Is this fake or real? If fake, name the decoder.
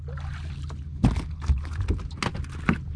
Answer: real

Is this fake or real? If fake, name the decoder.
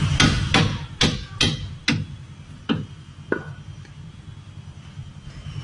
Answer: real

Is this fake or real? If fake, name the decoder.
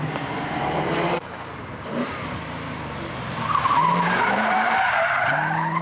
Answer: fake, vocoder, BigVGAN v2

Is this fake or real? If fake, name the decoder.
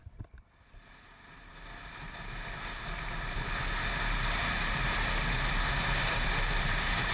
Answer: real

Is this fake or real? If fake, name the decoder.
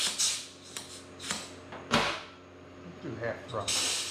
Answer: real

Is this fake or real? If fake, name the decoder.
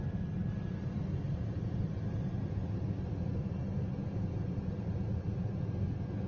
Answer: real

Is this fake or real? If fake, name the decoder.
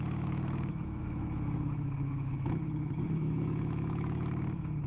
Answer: fake, autoencoder, DAC-VAE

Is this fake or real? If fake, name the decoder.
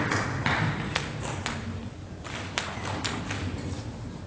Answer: real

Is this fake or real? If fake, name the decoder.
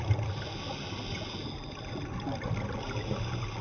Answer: real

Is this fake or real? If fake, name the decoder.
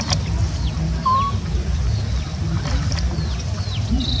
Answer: real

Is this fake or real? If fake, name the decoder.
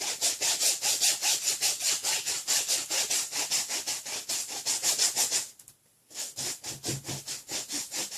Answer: real